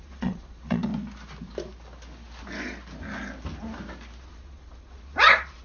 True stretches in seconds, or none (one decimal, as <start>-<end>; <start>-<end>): 0.9-4.2